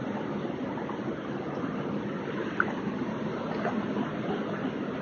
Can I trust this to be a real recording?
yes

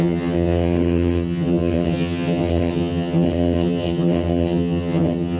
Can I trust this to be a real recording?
no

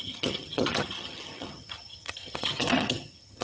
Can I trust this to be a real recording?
no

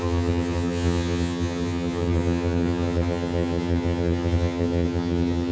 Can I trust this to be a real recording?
no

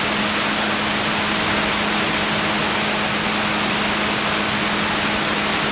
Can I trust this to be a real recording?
yes